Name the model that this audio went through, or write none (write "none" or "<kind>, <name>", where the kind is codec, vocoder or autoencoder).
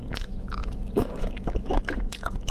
autoencoder, DAC-VAE